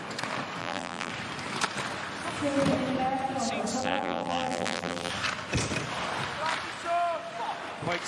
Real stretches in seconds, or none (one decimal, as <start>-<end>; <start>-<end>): 0.0-0.6; 1.1-3.8; 5.1-8.1